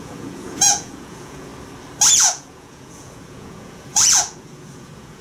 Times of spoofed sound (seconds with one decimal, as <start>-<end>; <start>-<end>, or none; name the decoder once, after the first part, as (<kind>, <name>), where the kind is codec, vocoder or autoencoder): 0.0-1.5 (vocoder, Vocos); 2.1-5.2